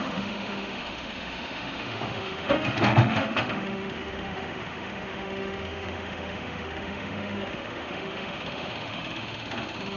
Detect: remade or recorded remade